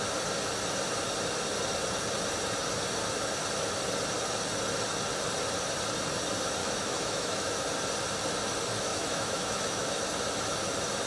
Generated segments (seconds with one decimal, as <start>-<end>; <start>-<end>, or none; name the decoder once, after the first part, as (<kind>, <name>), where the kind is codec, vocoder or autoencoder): 6.6-7.6 (autoencoder, DAC-VAE); 8.9-9.9